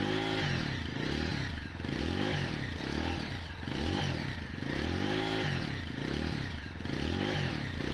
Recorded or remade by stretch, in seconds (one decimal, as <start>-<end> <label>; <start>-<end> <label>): 0.0-7.9 recorded